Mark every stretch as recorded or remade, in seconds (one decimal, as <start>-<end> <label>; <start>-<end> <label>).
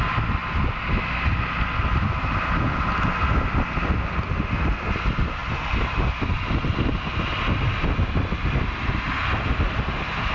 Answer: 0.0-10.3 recorded